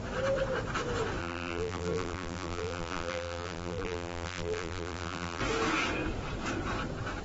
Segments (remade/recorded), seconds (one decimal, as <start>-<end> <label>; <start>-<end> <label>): 0.0-1.2 recorded; 1.2-5.4 remade; 5.4-7.2 recorded